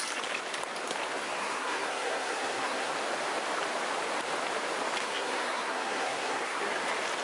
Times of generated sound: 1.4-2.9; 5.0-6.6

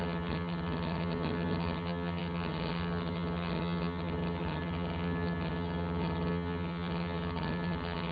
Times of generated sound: 0.0-8.1

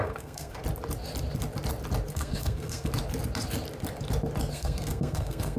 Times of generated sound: 0.0-0.6; 2.1-2.9; 4.5-5.6